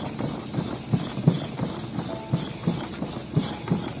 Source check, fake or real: real